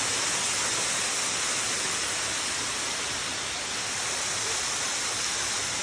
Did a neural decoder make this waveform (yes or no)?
no